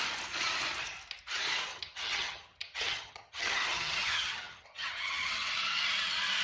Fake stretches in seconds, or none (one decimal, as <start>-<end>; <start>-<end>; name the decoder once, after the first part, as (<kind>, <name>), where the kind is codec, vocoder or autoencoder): 1.7-5.5 (vocoder, HiFi-GAN)